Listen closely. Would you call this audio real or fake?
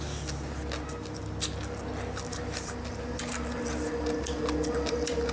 real